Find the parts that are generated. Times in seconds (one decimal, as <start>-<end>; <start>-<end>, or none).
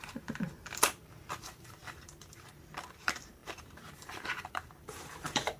0.0-5.6